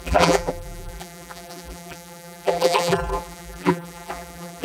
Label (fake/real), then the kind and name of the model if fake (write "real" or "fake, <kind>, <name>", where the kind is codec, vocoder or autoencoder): fake, vocoder, BigVGAN v2